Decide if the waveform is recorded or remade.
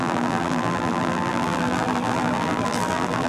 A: remade